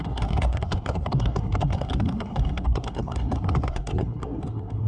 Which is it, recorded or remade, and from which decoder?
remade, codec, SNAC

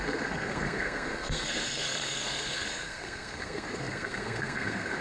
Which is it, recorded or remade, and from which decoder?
remade, codec, SNAC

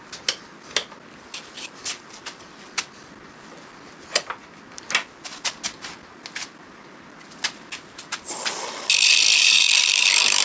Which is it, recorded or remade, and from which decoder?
recorded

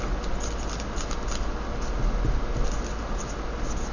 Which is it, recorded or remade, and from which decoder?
recorded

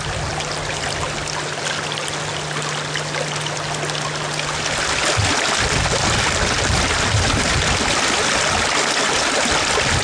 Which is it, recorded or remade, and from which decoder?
recorded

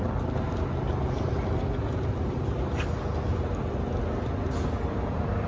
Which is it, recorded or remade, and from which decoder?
recorded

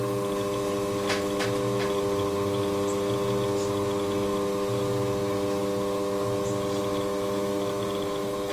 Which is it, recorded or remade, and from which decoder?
recorded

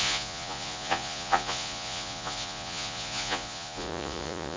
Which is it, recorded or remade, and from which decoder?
remade, vocoder, Vocos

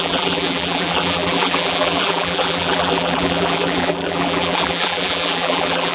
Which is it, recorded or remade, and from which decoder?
remade, vocoder, BigVGAN v2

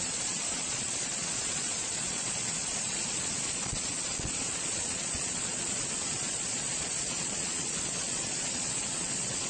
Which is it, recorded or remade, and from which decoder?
remade, vocoder, Vocos